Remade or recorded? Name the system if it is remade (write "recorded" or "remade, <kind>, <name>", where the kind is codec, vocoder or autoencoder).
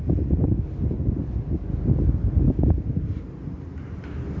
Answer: recorded